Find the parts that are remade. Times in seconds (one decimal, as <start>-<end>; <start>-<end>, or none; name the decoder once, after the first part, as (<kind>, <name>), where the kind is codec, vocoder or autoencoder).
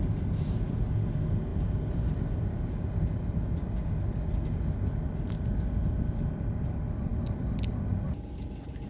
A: none